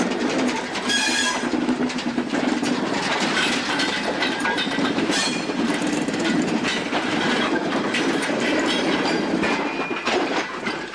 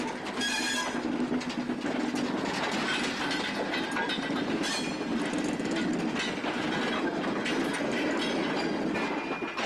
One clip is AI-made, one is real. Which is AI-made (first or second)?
first